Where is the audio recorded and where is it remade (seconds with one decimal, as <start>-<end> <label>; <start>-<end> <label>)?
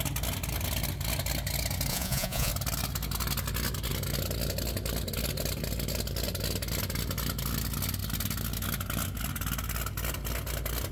0.0-1.9 recorded; 1.9-2.5 remade; 2.5-10.9 recorded